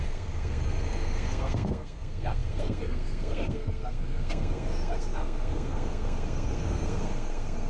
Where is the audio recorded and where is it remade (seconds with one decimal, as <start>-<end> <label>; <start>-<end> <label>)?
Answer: 0.0-7.7 remade